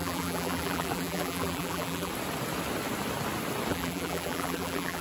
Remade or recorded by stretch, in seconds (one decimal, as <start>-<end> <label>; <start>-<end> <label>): 0.0-2.1 remade; 2.1-3.7 recorded; 3.7-5.0 remade